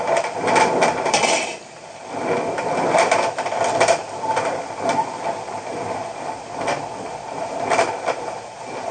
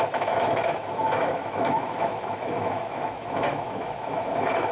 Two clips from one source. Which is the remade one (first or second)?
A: second